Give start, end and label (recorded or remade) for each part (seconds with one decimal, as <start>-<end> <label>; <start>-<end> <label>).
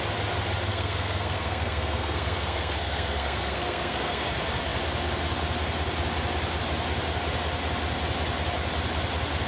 0.0-0.7 recorded; 0.7-4.3 remade; 4.3-9.5 recorded